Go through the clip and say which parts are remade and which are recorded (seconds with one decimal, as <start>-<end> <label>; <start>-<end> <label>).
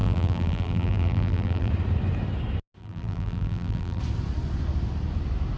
0.0-1.7 remade; 1.7-2.8 recorded; 2.8-4.0 remade; 4.0-5.6 recorded